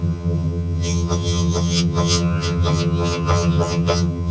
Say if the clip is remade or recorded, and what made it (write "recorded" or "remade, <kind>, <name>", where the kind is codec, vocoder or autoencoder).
remade, vocoder, HiFi-GAN